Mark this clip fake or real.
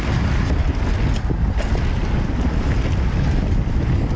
real